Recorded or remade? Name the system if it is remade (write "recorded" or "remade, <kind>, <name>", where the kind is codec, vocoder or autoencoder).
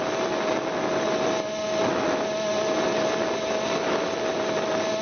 recorded